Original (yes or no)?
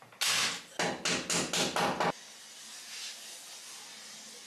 yes